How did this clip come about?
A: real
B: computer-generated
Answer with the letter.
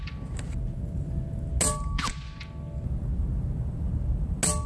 A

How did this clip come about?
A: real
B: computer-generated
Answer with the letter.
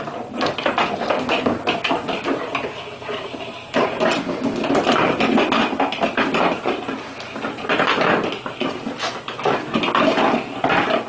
A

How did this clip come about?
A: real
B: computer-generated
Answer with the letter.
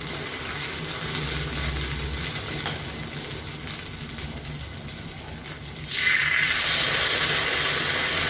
A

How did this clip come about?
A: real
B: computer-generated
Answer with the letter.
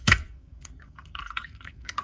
B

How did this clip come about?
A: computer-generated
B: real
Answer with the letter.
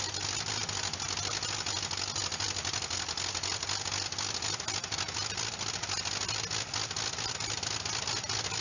B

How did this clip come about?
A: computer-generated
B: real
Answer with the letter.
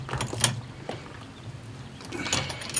B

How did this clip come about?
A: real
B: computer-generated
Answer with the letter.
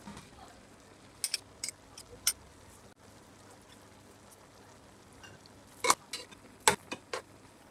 A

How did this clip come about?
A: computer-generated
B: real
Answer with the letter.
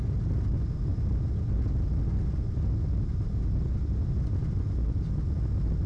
B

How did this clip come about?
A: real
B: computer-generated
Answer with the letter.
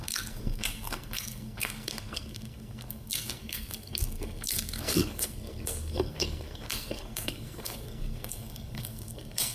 B